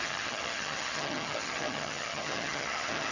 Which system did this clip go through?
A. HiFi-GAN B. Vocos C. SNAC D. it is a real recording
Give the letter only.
A